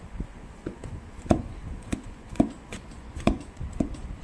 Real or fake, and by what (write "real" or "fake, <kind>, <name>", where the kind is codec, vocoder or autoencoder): fake, vocoder, Vocos